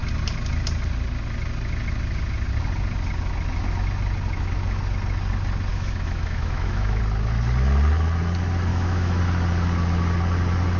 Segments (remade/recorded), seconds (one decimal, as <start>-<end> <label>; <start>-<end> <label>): 0.0-5.7 recorded; 5.7-7.0 remade; 7.0-8.7 recorded; 8.7-9.2 remade; 9.2-10.8 recorded